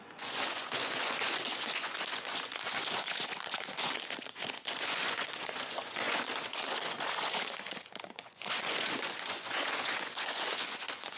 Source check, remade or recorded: remade